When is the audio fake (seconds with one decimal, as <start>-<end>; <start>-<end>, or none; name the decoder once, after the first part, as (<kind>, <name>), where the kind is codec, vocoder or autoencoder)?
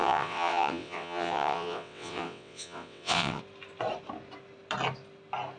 0.0-3.4 (vocoder, WaveNeXt)